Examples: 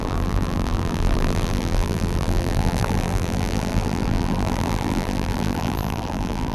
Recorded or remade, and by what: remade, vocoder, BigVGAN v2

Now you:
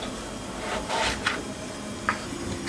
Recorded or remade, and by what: recorded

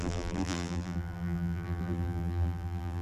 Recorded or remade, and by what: remade, vocoder, BigVGAN v2